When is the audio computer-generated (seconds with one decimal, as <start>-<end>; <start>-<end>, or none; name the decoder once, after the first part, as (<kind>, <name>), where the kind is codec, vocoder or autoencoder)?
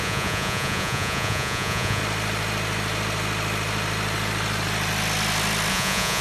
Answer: 0.0-2.0 (vocoder, Vocos); 5.7-6.2